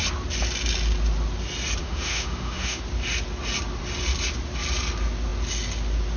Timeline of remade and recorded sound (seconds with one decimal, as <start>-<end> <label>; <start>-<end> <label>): 0.0-1.8 recorded; 1.8-2.8 remade; 2.8-6.2 recorded

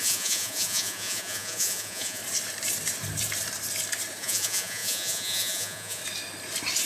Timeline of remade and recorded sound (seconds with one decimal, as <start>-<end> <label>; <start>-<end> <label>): 0.0-2.2 remade; 2.2-4.2 recorded; 4.2-6.0 remade; 6.0-6.9 recorded

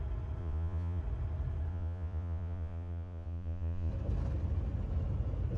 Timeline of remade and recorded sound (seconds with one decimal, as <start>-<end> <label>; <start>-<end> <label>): 0.0-0.4 recorded; 0.4-1.0 remade; 1.0-1.7 recorded; 1.7-3.9 remade; 3.9-5.6 recorded

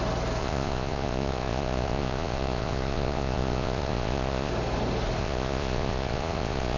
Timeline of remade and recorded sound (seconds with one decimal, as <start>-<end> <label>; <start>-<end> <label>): 0.0-0.4 recorded; 0.4-4.5 remade; 4.5-5.2 recorded; 5.2-6.8 remade

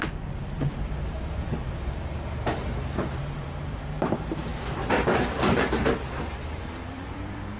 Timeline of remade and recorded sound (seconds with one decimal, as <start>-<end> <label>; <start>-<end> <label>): 0.0-7.6 remade